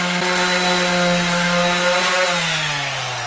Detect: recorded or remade recorded